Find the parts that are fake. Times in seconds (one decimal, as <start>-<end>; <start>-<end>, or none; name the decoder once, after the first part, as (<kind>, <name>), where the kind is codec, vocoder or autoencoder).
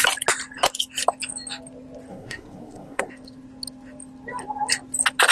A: 2.1-3.1 (codec, SNAC)